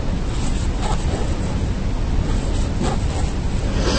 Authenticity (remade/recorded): recorded